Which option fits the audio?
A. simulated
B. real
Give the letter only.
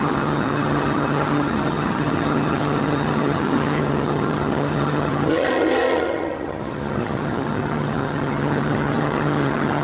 A